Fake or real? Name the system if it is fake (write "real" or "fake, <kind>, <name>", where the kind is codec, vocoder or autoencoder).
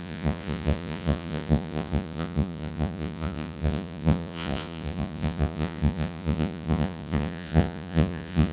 fake, vocoder, Vocos